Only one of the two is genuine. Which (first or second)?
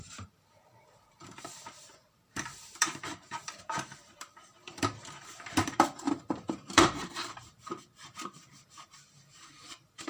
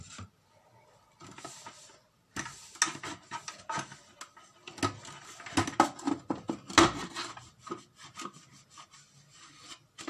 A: second